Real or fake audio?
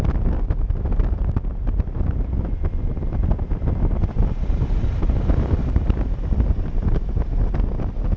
fake